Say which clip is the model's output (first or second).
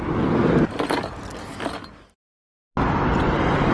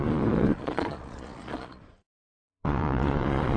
second